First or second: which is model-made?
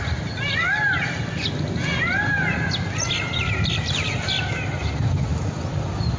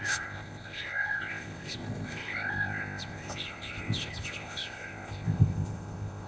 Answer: second